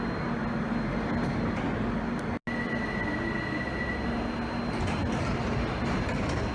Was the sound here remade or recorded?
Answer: recorded